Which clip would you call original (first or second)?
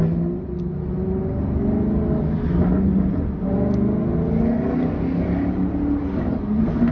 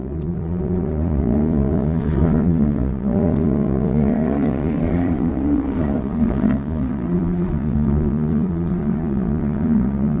first